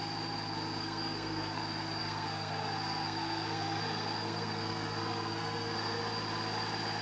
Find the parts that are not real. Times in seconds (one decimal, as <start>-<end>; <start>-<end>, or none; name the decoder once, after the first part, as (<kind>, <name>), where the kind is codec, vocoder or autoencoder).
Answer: 0.8-1.6 (codec, SNAC); 2.0-6.0